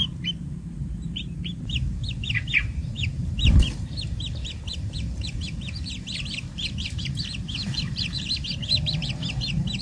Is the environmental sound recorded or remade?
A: remade